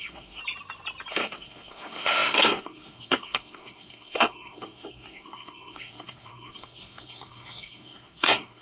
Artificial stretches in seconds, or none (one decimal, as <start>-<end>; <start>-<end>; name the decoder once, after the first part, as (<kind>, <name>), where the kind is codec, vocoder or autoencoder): 0.0-0.4 (codec, SNAC); 1.1-8.6